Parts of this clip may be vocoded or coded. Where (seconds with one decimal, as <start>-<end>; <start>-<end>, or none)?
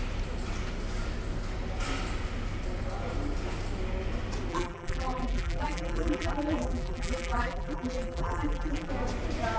4.5-8.9